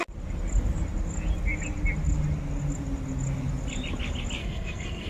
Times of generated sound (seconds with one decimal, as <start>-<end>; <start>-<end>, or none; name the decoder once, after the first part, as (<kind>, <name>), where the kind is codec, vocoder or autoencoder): 4.4-5.1 (codec, SNAC)